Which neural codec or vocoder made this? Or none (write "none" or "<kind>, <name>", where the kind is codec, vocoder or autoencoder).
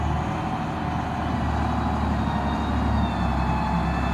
none